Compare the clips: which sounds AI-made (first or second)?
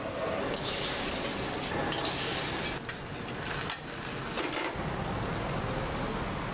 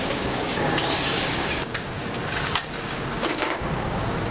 second